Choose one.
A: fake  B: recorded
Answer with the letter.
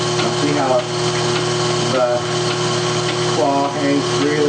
B